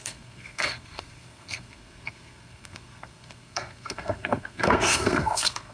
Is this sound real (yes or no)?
no